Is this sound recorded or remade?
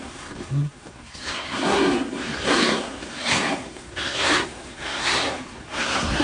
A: remade